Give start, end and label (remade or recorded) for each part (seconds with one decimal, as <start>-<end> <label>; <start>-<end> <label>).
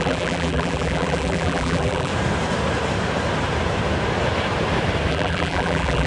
0.0-2.1 remade; 2.1-5.1 recorded; 5.1-6.1 remade